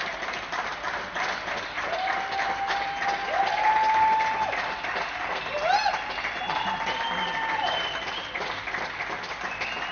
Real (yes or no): yes